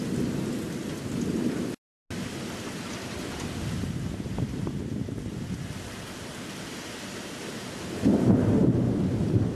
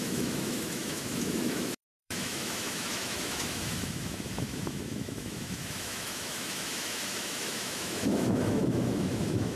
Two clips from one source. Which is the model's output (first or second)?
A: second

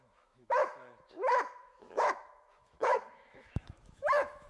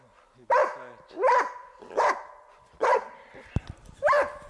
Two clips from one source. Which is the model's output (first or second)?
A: first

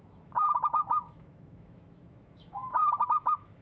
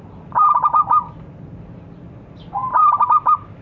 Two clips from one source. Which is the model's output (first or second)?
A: first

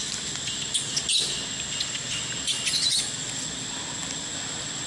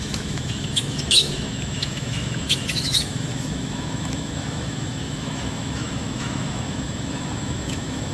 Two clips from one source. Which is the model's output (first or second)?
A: second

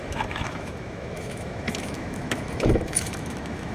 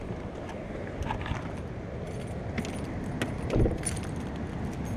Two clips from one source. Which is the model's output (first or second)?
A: first